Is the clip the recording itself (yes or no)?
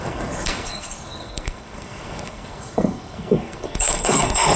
no